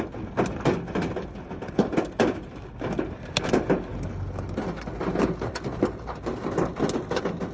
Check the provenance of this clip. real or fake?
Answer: real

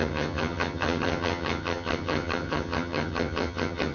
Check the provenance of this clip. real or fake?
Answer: fake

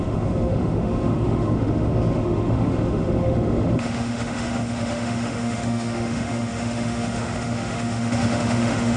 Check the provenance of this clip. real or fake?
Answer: fake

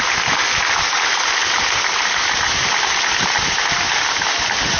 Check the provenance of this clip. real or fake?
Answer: real